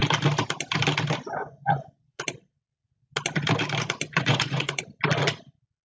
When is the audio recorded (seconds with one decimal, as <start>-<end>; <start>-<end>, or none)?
0.0-1.4; 2.2-4.1; 4.8-5.8